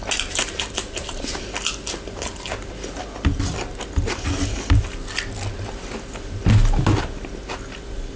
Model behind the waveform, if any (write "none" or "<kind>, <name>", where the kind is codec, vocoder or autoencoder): none